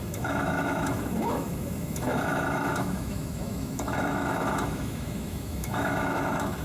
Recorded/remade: remade